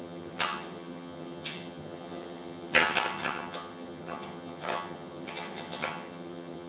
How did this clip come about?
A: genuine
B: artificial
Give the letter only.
B